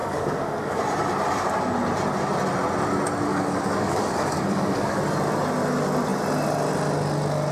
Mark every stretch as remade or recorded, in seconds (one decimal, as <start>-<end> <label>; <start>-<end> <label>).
0.0-0.8 remade; 0.8-3.3 recorded; 3.3-5.0 remade; 5.0-7.5 recorded

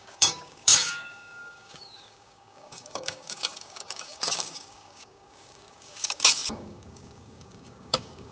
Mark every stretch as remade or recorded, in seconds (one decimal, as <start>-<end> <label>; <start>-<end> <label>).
0.0-8.3 remade

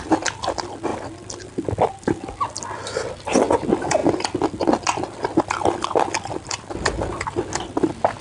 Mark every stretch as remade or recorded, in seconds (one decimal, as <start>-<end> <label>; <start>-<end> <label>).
0.0-8.2 recorded

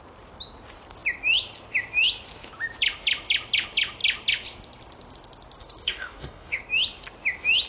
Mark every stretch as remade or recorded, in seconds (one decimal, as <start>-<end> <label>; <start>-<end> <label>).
0.0-5.6 recorded; 5.6-6.6 remade; 6.6-7.7 recorded